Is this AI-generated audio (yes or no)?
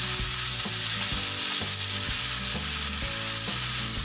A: no